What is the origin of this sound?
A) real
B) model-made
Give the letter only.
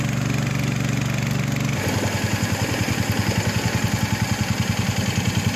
A